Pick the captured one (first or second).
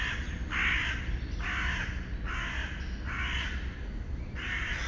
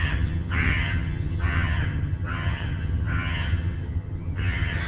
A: first